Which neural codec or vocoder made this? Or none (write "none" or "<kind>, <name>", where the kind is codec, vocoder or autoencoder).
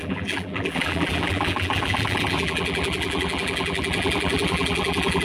vocoder, BigVGAN v2